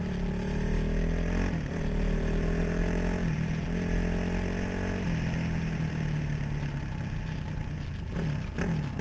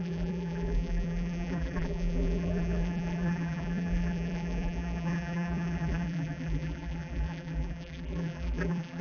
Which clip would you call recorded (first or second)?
first